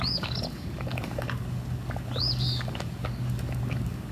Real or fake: fake